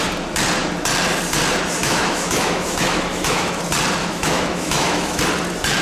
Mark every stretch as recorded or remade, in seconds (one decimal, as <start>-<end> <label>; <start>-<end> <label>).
0.0-1.8 recorded; 1.8-3.6 remade; 3.6-4.0 recorded; 4.0-5.2 remade; 5.2-5.8 recorded